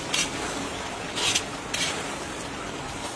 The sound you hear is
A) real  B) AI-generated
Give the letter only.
A